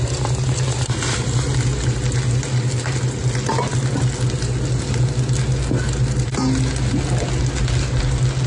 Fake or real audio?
real